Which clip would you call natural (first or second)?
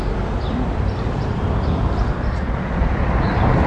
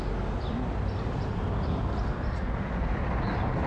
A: second